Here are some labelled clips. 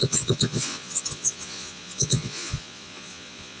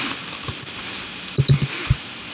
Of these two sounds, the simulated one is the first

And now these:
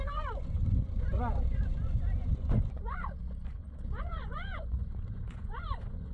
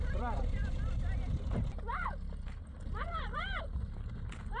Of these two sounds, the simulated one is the first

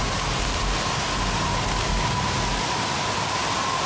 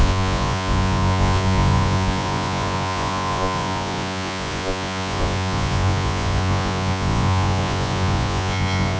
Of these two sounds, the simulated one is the second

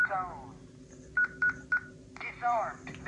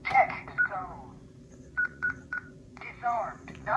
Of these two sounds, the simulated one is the second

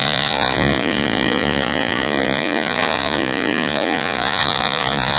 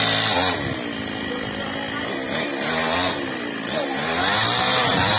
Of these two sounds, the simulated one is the first